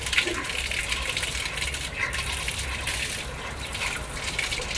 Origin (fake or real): real